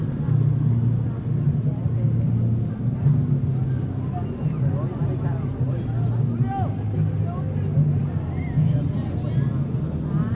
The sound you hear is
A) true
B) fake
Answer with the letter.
A